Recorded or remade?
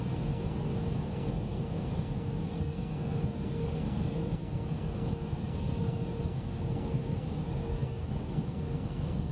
remade